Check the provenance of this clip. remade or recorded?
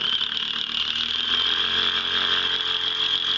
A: recorded